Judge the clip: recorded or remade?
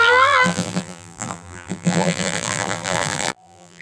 remade